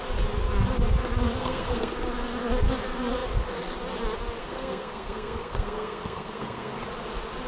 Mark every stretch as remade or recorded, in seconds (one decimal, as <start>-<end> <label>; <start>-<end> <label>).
0.0-1.4 recorded; 1.4-1.9 remade; 1.9-4.4 recorded; 4.4-6.8 remade; 6.8-7.5 recorded